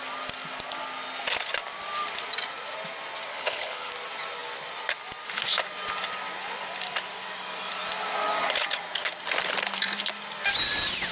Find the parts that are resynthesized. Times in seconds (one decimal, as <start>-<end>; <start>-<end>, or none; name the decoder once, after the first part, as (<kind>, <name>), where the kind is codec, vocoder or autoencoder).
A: 3.3-3.9 (codec, HILCodec)